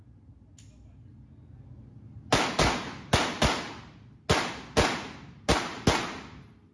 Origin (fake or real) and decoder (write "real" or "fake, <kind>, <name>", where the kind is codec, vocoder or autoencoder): real